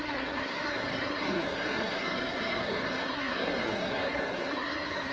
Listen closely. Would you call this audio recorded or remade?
remade